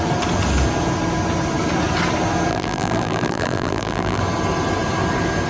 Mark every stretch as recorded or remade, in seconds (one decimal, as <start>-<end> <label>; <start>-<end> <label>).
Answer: 0.0-2.5 recorded; 2.5-4.2 remade; 4.2-5.5 recorded